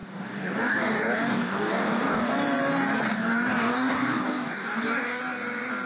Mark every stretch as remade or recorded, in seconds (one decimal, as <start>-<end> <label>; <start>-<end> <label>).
0.0-2.3 remade; 2.3-3.1 recorded; 3.1-5.2 remade; 5.2-5.9 recorded